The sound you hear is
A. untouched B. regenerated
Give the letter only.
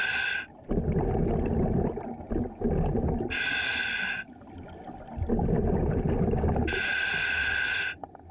A